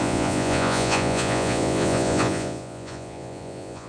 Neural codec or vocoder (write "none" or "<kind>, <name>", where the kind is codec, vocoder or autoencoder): vocoder, Vocos